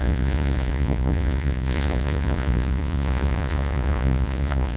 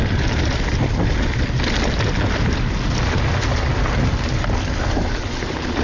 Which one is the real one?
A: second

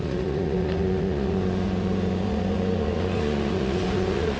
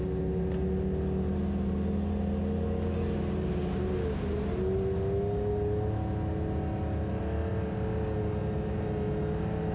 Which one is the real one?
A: second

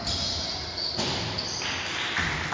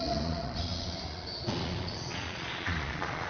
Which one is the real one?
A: first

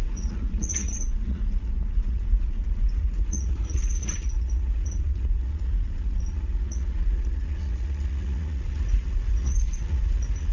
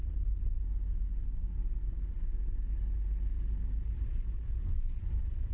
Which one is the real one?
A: second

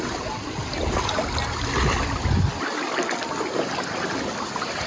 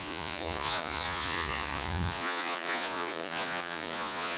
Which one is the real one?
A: first